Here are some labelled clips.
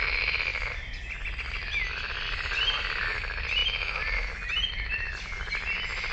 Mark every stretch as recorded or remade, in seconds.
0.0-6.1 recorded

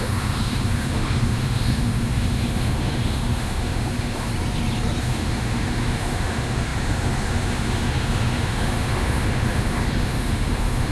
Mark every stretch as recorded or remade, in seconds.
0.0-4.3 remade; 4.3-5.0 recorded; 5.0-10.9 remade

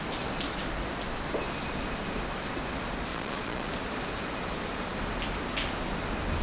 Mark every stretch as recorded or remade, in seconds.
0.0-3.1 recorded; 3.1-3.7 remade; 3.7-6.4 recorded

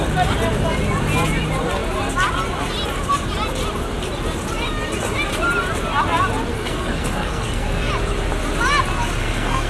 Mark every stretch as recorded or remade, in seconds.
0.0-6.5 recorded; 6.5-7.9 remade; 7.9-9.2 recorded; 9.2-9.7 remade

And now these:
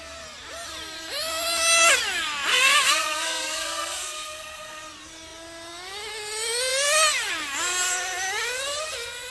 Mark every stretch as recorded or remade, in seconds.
0.0-2.5 recorded; 2.5-4.8 remade; 4.8-9.3 recorded